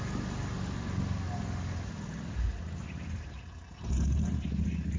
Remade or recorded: recorded